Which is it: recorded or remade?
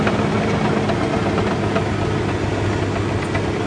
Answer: recorded